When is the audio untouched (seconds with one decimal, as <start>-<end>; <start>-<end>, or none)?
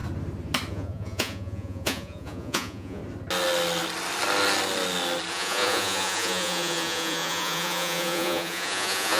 0.0-0.7; 3.0-5.3